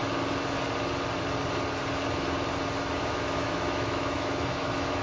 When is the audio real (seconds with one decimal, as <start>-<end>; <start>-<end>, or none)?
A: 0.0-3.0